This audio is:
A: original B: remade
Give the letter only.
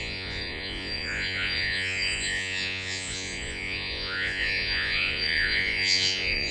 B